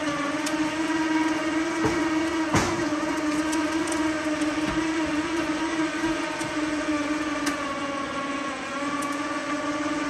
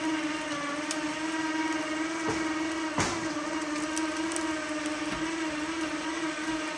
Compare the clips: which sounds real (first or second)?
second